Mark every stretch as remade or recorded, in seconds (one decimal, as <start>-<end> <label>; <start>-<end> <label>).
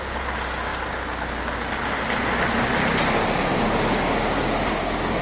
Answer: 0.0-3.5 recorded; 3.5-5.2 remade